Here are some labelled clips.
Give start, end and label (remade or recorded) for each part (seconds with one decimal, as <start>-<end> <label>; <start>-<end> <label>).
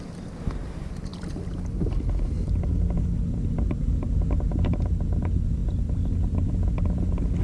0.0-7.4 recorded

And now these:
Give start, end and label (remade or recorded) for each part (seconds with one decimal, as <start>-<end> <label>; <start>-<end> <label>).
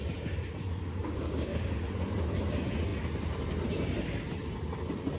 0.0-0.9 recorded; 0.9-1.7 remade; 1.7-5.2 recorded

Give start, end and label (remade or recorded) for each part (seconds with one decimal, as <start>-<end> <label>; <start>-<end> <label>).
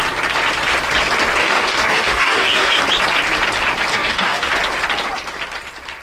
0.0-1.4 recorded; 1.4-2.8 remade; 2.8-3.9 recorded; 3.9-4.5 remade; 4.5-6.0 recorded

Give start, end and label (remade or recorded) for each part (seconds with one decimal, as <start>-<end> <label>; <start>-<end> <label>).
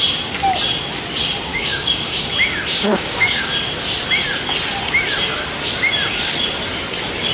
0.0-1.5 recorded; 1.5-2.2 remade; 2.2-2.7 recorded; 2.7-3.5 remade; 3.5-7.3 recorded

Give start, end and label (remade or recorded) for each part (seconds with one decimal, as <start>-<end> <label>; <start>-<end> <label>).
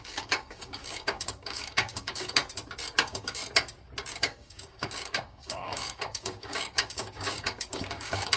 0.0-2.4 remade; 2.4-3.0 recorded; 3.0-3.4 remade; 3.4-4.1 recorded; 4.1-8.4 remade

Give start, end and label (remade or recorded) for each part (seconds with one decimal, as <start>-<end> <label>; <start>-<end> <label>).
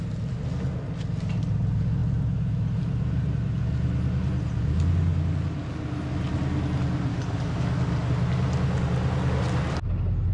0.0-7.1 recorded; 7.1-8.1 remade; 8.1-10.3 recorded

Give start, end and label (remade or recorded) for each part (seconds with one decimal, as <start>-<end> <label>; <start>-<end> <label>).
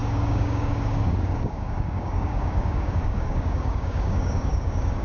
0.0-5.0 remade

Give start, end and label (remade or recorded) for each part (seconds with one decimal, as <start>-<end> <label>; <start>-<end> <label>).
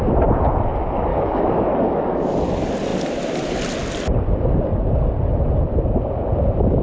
0.0-1.1 recorded; 1.1-2.3 remade; 2.3-6.8 recorded